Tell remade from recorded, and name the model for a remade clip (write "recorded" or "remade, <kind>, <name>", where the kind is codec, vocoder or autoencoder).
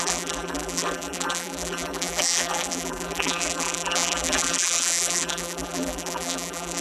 remade, vocoder, BigVGAN v2